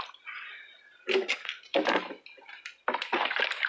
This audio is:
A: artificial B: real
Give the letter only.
B